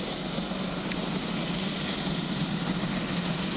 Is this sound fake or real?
real